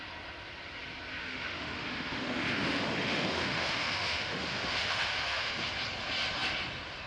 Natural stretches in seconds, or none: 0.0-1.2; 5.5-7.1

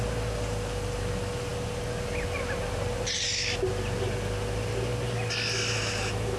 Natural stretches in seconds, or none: 0.0-6.4

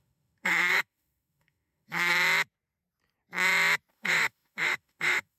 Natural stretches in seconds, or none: 2.1-3.9

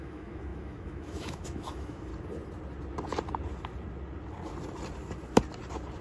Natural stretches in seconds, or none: 2.1-6.0

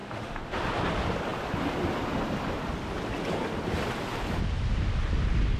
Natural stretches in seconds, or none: 0.6-5.6

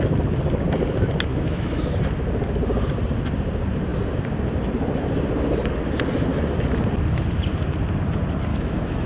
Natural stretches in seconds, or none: 0.0-1.3; 2.0-8.5

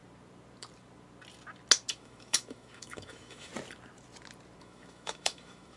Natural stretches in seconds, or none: 0.0-1.9; 3.5-4.6

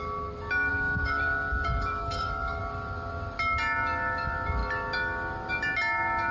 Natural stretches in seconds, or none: 0.0-0.7; 2.6-6.3